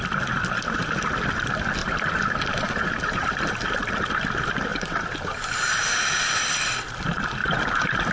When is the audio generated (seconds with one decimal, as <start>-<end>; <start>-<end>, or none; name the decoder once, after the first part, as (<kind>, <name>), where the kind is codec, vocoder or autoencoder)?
1.8-3.5 (vocoder, BigVGAN v2); 4.7-5.5; 7.4-8.1